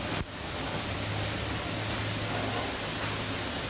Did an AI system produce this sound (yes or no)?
no